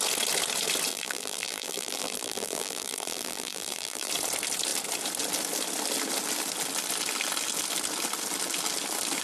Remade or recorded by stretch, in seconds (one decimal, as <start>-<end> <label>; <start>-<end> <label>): 0.0-0.9 recorded; 0.9-4.1 remade; 4.1-9.2 recorded